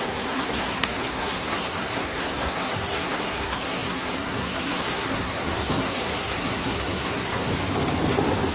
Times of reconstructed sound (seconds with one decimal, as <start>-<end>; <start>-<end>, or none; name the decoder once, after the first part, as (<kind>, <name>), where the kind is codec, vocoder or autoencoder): 0.0-7.5 (codec, SNAC)